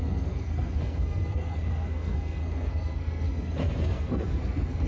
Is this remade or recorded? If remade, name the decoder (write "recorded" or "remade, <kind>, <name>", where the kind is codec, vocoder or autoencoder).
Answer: remade, codec, SNAC